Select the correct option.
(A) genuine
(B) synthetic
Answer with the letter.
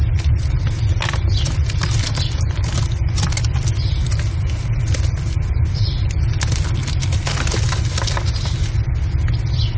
A